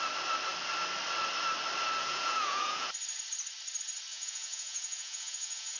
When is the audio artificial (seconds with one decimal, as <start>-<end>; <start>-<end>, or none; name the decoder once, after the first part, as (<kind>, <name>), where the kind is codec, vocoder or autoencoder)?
2.0-2.9 (vocoder, Vocos); 4.1-5.8